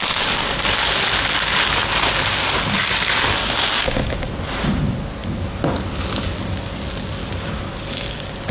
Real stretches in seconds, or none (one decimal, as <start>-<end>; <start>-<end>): 0.0-3.6; 4.3-8.5